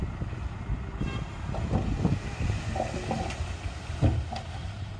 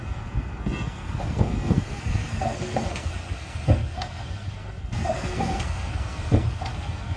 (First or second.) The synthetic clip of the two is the second